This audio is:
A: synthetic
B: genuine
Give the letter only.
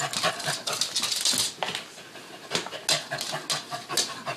B